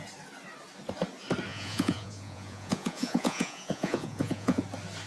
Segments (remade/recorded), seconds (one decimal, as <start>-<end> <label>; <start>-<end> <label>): 0.0-1.5 recorded; 1.5-4.6 remade; 4.6-5.1 recorded